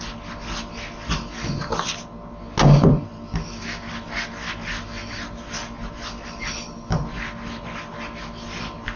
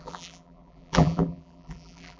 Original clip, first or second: first